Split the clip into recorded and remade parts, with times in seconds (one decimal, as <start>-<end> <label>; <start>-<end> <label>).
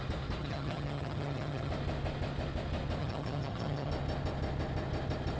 0.0-0.4 recorded; 0.4-1.7 remade; 1.7-3.0 recorded; 3.0-3.9 remade; 3.9-5.4 recorded